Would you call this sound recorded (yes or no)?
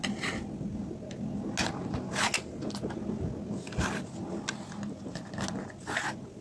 yes